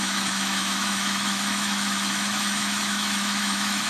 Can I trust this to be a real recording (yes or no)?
no